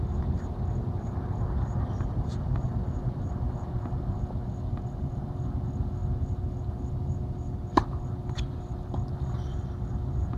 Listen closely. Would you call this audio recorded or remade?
recorded